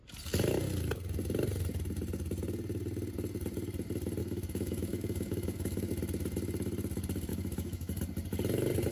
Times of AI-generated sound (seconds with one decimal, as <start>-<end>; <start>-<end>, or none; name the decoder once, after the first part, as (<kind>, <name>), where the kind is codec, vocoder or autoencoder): 4.2-5.9 (autoencoder, DAC-VAE); 7.3-8.0